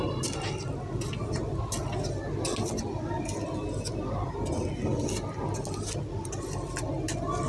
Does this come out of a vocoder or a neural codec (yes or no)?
no